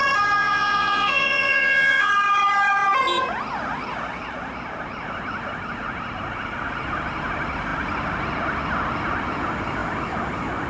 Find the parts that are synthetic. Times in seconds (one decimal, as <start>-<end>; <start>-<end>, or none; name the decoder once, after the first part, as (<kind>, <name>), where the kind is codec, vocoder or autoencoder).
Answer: 0.4-2.1 (vocoder, Vocos)